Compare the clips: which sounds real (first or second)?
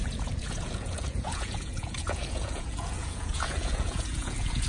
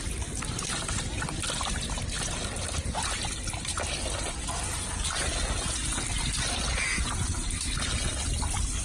second